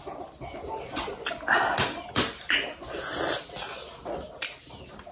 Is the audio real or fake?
real